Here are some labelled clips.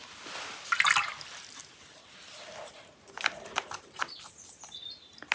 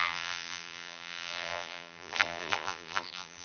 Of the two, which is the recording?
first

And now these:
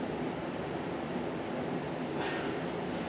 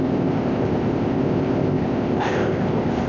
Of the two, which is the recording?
first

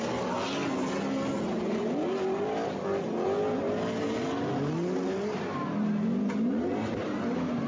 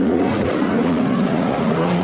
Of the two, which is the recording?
first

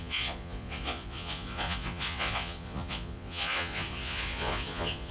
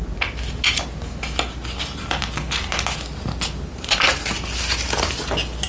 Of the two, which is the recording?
second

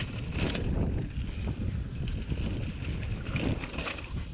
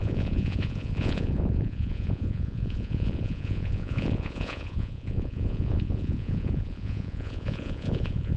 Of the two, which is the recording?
first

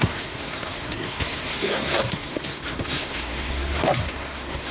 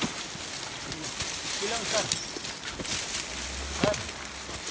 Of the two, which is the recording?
second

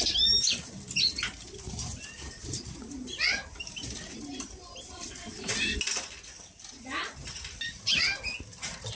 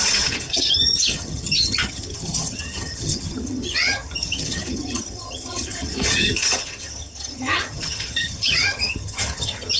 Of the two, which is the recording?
first